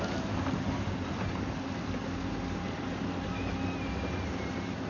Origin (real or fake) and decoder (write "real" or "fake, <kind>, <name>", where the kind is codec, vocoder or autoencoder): real